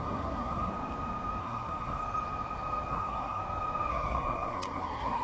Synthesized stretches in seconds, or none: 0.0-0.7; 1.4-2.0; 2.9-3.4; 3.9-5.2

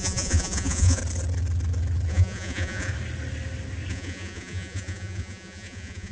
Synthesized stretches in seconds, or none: 0.0-1.0; 2.1-2.9; 3.9-6.1